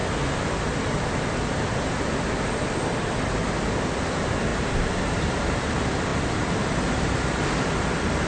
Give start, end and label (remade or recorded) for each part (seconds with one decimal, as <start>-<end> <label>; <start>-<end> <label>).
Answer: 0.0-4.5 recorded; 4.5-5.2 remade; 5.2-8.3 recorded